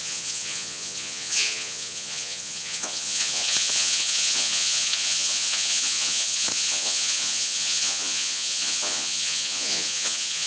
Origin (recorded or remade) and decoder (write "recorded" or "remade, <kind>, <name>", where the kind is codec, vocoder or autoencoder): remade, vocoder, Vocos